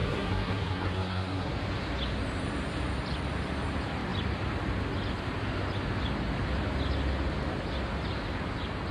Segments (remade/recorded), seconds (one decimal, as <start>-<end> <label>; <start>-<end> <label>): 0.0-1.5 remade; 1.5-8.9 recorded